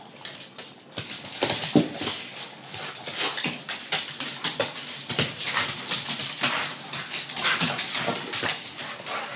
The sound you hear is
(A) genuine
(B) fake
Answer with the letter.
B